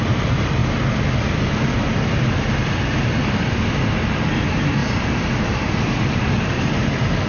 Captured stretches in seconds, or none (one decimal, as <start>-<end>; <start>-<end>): 0.6-4.2